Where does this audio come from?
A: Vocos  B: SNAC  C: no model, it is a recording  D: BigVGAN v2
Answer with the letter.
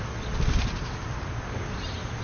C